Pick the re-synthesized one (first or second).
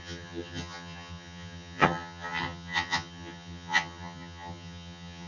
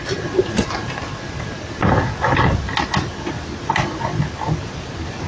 first